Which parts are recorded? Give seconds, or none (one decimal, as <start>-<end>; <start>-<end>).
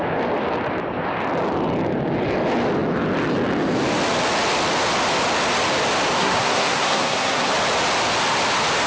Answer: 0.0-6.2; 7.5-8.9